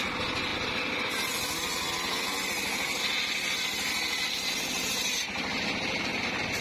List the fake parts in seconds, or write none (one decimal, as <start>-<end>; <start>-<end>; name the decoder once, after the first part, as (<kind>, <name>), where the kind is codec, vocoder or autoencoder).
none